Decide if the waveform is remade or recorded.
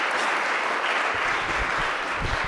recorded